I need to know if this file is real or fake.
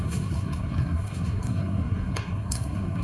fake